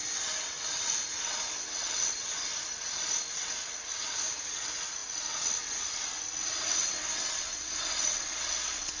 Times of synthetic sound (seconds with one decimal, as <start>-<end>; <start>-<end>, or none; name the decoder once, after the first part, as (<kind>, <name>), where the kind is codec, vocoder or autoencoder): 0.0-2.5 (vocoder, WaveNeXt); 3.3-9.0